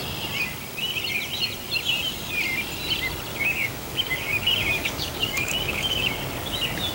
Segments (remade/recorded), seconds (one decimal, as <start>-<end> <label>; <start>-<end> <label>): 0.0-3.3 recorded; 3.3-6.1 remade; 6.1-6.9 recorded